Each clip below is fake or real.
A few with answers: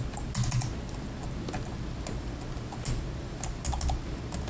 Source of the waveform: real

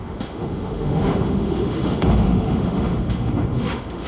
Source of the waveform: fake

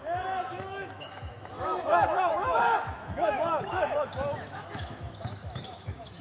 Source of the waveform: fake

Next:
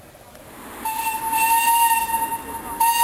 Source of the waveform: real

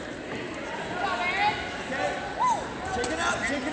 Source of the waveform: real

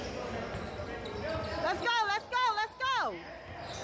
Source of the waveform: real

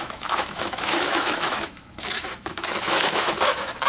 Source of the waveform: fake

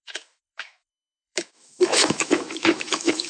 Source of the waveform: fake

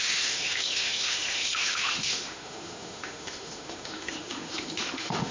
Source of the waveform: fake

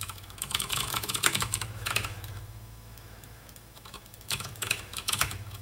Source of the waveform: fake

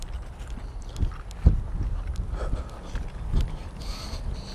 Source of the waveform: real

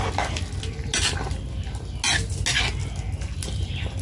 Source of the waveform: real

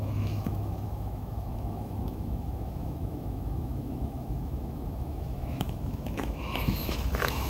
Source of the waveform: fake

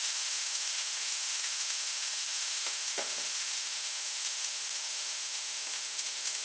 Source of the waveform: fake